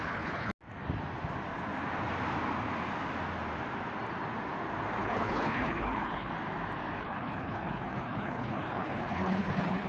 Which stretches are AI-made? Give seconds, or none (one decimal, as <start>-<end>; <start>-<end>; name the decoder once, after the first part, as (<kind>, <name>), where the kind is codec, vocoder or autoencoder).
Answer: 0.0-0.5 (codec, HILCodec); 5.0-6.3; 7.0-9.9